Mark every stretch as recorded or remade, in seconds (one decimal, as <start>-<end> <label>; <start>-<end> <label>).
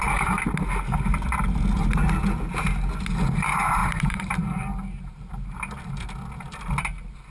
0.0-3.8 recorded; 3.8-5.2 remade; 5.2-7.3 recorded